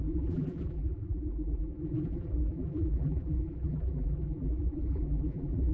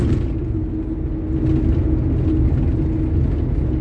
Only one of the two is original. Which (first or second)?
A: second